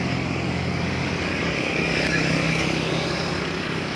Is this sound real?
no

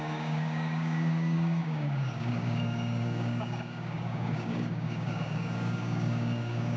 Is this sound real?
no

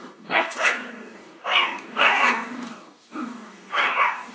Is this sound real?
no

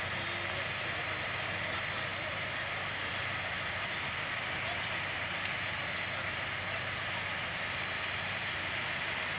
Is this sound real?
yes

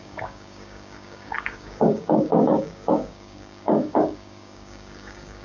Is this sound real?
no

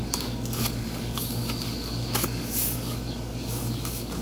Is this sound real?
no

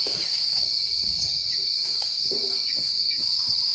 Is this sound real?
no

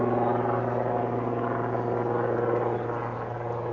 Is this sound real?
yes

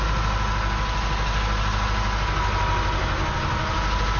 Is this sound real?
yes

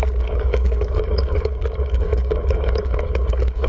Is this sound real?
no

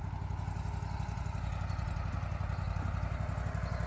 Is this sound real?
yes